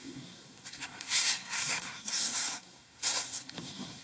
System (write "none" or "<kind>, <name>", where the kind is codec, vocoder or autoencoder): codec, SNAC